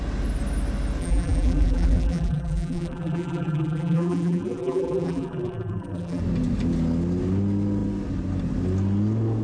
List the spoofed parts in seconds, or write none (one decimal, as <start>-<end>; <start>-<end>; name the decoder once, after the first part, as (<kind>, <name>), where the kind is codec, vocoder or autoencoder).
1.0-6.2 (vocoder, BigVGAN v2)